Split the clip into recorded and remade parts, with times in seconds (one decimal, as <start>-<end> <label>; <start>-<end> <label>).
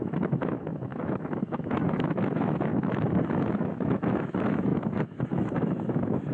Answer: 0.0-2.7 remade; 2.7-3.3 recorded; 3.3-6.3 remade